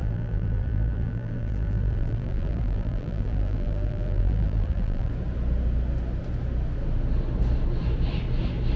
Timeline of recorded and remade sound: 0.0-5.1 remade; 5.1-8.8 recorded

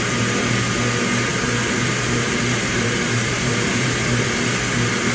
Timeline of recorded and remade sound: 0.0-1.3 recorded; 1.3-4.4 remade; 4.4-5.1 recorded

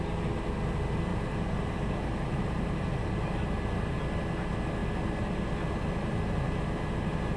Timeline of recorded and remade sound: 0.0-1.1 recorded; 1.1-4.0 remade; 4.0-7.4 recorded

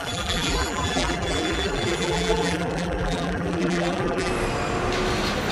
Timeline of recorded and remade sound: 0.0-4.3 remade; 4.3-5.5 recorded

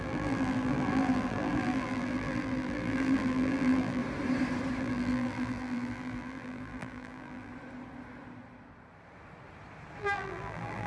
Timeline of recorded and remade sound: 0.0-4.0 remade; 4.0-4.8 recorded; 4.8-7.5 remade; 7.5-10.0 recorded; 10.0-10.9 remade

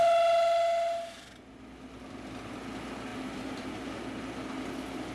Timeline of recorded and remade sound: 0.0-3.1 recorded; 3.1-4.0 remade; 4.0-5.1 recorded